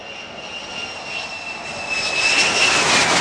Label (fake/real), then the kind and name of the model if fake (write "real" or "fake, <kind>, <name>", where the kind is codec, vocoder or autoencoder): real